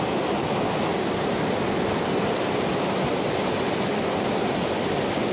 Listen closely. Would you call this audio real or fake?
real